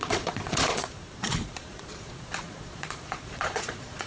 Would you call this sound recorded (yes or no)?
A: no